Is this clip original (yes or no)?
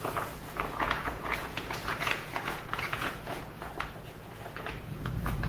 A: no